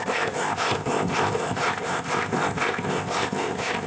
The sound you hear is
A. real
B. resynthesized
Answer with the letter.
B